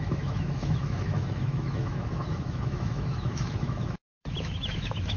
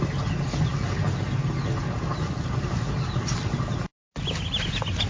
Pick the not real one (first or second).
first